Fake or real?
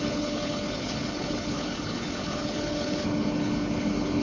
fake